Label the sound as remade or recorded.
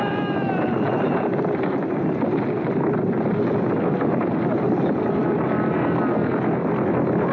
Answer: recorded